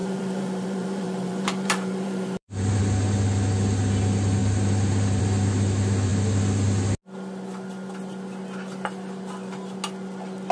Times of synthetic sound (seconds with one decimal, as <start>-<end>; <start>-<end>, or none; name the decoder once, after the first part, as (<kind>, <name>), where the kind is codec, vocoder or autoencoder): 0.0-2.8 (vocoder, BigVGAN v2); 4.4-5.2